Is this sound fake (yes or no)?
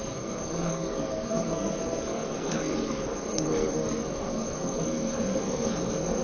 yes